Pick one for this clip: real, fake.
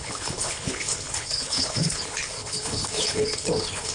fake